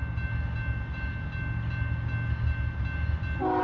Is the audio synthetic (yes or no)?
no